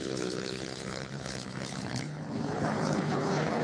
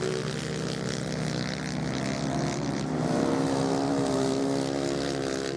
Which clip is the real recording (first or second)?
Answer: second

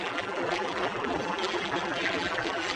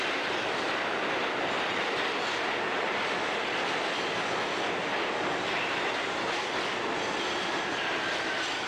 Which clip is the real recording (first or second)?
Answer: second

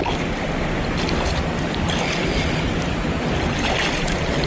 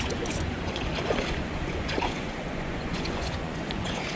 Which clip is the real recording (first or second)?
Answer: first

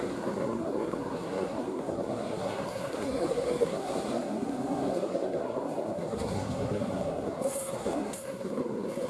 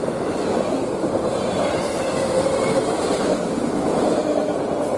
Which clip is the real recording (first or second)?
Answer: second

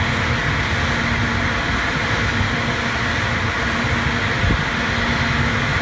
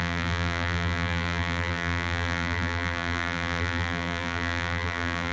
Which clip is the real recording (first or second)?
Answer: first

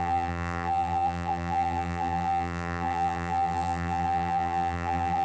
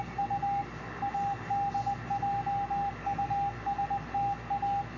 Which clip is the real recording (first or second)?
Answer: second